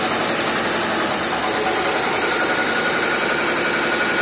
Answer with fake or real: real